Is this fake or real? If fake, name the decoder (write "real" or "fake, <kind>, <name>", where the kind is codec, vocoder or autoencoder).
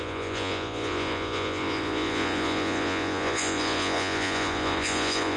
fake, vocoder, Vocos